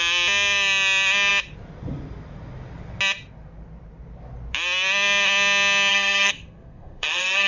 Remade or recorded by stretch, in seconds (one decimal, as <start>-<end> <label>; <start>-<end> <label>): 0.0-5.9 recorded; 5.9-7.5 remade